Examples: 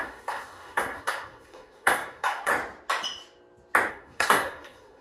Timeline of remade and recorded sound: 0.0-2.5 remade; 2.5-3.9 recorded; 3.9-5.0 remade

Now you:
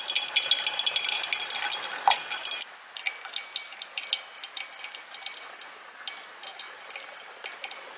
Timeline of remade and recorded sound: 0.0-8.0 recorded

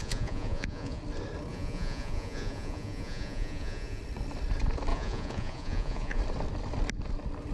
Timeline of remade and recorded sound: 0.0-1.0 remade; 1.0-1.5 recorded; 1.5-4.0 remade; 4.0-4.9 recorded; 4.9-6.2 remade; 6.2-7.5 recorded

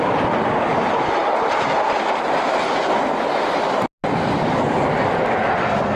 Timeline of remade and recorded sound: 0.0-6.0 recorded

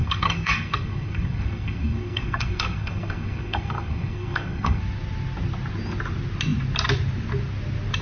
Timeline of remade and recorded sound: 0.0-4.8 remade; 4.8-8.0 recorded

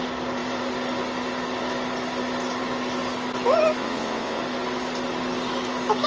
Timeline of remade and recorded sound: 0.0-3.8 recorded; 3.8-4.4 remade; 4.4-6.1 recorded

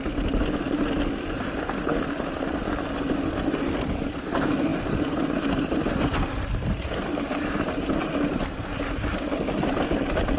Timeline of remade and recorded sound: 0.0-4.7 recorded; 4.7-5.2 remade; 5.2-7.1 recorded; 7.1-8.3 remade; 8.3-10.4 recorded

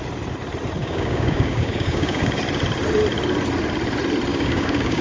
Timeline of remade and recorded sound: 0.0-0.8 recorded; 0.8-2.4 remade; 2.4-4.3 recorded; 4.3-5.0 remade